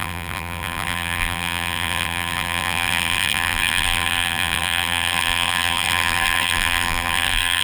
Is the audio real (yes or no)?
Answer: no